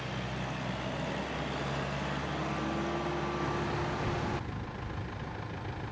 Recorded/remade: recorded